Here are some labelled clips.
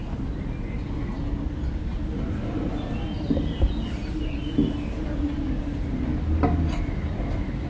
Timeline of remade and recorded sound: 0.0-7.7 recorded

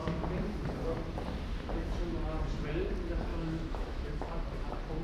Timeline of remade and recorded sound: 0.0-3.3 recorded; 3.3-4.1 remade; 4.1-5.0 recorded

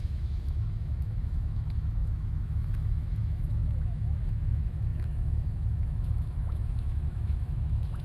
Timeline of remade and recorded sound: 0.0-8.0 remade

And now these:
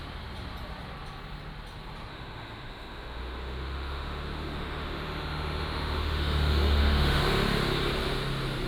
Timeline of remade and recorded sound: 0.0-2.1 recorded; 2.1-7.2 remade; 7.2-8.7 recorded